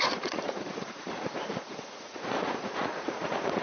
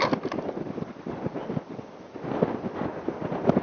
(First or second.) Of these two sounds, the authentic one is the second